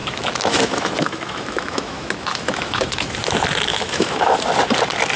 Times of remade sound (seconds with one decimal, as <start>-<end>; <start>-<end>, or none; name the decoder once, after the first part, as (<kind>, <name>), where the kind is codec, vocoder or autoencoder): 0.0-3.1 (autoencoder, DAC-VAE); 3.7-4.4